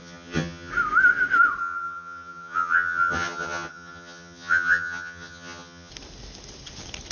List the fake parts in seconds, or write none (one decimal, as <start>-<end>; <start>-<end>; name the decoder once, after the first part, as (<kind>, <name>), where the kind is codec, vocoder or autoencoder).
0.0-0.7 (vocoder, HiFi-GAN); 1.6-5.9